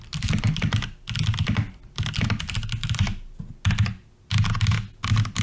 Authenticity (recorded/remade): recorded